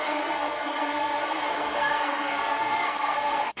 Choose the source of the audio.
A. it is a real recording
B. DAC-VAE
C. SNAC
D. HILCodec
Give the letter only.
C